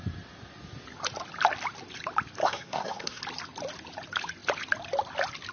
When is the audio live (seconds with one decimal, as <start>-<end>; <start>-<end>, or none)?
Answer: 0.0-2.4; 3.2-5.5